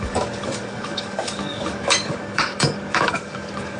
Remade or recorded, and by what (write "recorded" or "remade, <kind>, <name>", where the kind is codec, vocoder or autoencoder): remade, codec, DAC